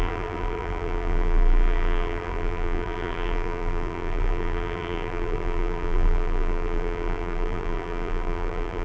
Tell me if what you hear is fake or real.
fake